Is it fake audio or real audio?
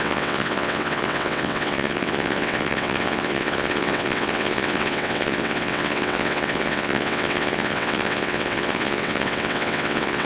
fake